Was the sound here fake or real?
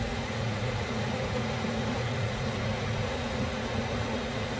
fake